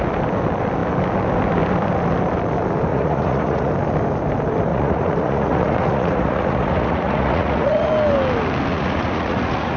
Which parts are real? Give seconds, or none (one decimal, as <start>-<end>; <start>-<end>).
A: 0.0-2.9; 3.7-4.7; 7.9-8.7